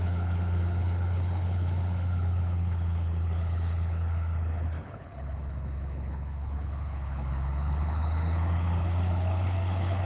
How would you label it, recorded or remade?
remade